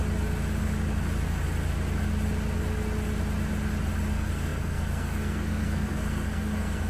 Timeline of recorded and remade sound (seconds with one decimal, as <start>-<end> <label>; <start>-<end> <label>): 0.0-4.1 recorded; 4.1-6.9 remade